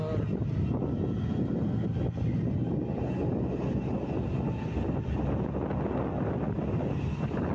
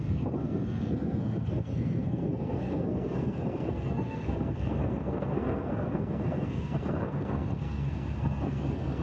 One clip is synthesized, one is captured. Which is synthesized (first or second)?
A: second